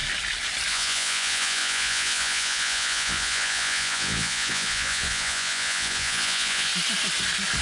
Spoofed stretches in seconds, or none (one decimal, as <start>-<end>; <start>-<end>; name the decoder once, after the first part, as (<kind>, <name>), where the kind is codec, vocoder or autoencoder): 0.7-6.7 (vocoder, Vocos)